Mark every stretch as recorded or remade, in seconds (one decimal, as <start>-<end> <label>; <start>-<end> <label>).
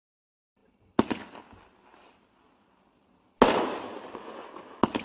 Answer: 0.0-5.0 recorded